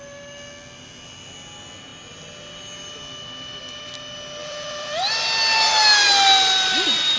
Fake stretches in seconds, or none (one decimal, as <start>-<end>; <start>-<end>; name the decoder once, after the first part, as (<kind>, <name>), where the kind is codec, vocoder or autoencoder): 4.4-5.0 (vocoder, BigVGAN v2)